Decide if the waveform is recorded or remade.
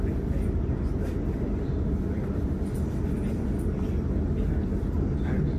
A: recorded